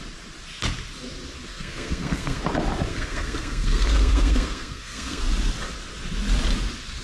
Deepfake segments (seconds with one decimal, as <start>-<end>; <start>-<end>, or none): 1.5-2.4; 2.9-5.2